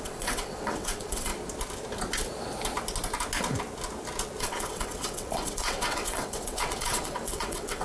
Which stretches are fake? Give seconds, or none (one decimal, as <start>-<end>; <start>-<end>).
0.0-1.3; 4.4-7.8